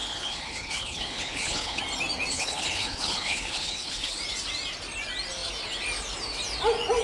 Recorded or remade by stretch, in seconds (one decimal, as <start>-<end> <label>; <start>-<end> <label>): 0.0-1.8 remade; 1.8-2.3 recorded; 2.3-4.2 remade; 4.2-7.0 recorded